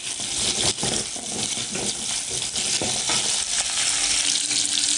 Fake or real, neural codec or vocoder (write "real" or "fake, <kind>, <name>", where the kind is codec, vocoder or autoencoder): real